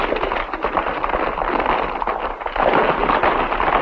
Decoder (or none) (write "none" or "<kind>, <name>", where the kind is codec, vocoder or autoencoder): none